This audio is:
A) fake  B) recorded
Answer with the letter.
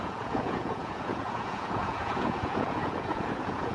A